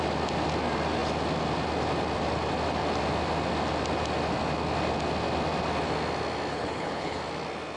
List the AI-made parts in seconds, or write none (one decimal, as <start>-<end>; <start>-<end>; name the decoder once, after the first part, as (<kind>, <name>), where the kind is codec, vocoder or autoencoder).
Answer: 6.5-7.2 (codec, HILCodec)